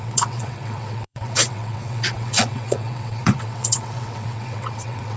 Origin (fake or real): fake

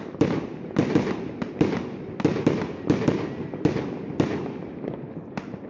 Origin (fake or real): real